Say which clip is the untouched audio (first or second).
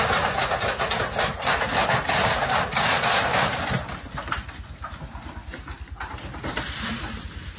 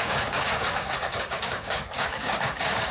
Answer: first